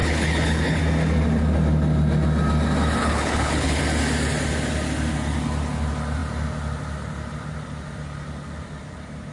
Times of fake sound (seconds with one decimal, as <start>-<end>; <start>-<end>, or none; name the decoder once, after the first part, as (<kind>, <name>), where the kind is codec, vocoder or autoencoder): 0.0-0.8 (codec, HILCodec); 3.0-3.8